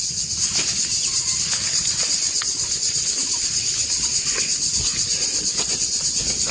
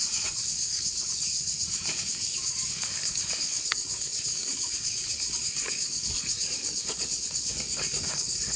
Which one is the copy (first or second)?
second